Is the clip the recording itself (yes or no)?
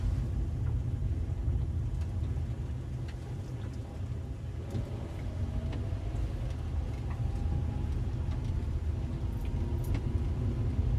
yes